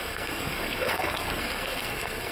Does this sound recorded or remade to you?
remade